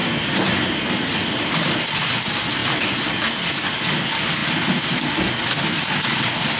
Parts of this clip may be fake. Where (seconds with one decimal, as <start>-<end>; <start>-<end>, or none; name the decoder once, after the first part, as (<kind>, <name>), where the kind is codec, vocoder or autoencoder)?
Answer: none